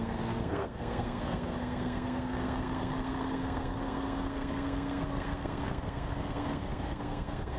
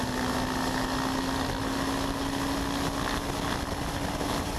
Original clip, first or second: second